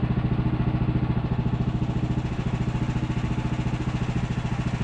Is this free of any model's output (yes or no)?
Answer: yes